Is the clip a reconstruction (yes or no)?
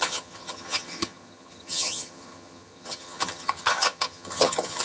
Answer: yes